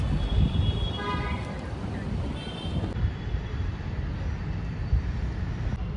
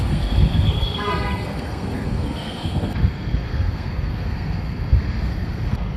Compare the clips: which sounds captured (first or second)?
first